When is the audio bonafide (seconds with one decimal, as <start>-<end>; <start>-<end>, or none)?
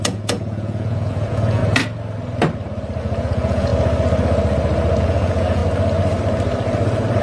1.6-3.0; 3.7-5.0; 5.6-7.2